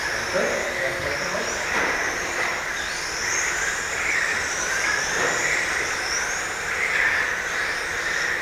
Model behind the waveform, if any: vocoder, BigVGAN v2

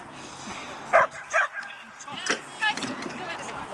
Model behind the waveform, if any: vocoder, BigVGAN v2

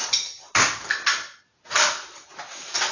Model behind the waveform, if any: none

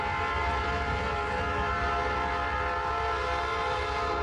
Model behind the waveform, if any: none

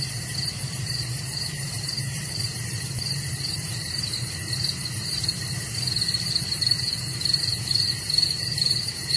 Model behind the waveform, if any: vocoder, BigVGAN v2